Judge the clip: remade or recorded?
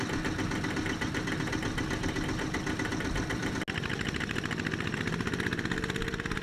recorded